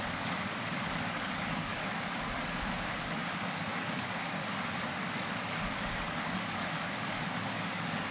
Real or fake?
fake